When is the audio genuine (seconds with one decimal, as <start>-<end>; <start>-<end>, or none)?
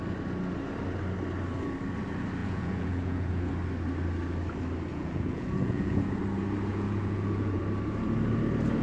0.0-2.4; 3.5-4.9; 6.2-6.7; 7.6-8.8